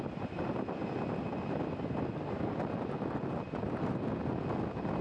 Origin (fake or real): real